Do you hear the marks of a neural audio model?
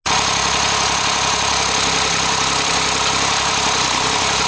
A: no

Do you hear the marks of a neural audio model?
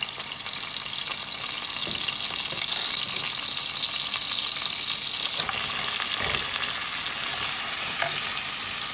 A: no